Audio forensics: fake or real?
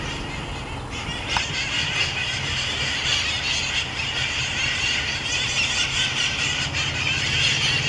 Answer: real